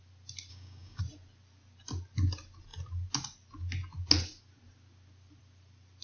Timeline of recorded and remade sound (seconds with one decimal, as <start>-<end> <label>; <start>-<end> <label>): 0.0-0.5 recorded; 0.5-1.0 remade; 1.0-6.0 recorded

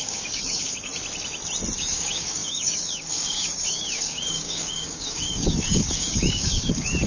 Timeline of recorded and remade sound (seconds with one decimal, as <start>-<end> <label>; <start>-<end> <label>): 0.0-0.9 remade; 0.9-1.8 recorded; 1.8-7.1 remade

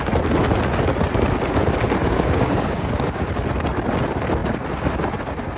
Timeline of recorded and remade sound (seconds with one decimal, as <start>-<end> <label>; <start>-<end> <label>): 0.0-2.0 recorded; 2.0-3.3 remade; 3.3-5.6 recorded

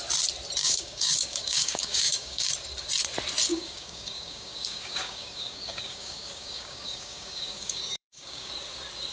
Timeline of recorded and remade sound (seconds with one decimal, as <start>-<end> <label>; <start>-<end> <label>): 0.0-0.6 recorded; 0.6-2.5 remade; 2.5-3.5 recorded; 3.5-8.5 remade; 8.5-9.1 recorded

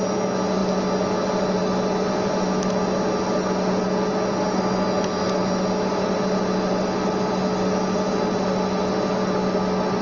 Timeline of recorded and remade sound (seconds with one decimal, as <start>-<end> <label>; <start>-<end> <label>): 0.0-10.0 recorded

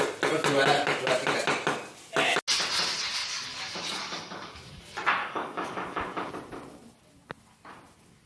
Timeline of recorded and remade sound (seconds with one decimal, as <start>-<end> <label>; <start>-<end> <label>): 0.0-3.2 recorded; 3.2-4.8 remade; 4.8-5.2 recorded; 5.2-6.3 remade; 6.3-8.3 recorded

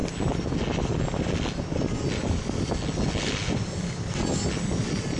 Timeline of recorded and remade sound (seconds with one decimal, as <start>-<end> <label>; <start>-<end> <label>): 0.0-5.2 recorded

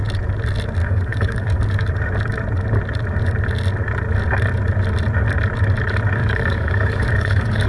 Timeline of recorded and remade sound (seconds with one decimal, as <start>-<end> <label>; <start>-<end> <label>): 0.0-0.8 recorded; 0.8-1.9 remade; 1.9-6.2 recorded; 6.2-7.7 remade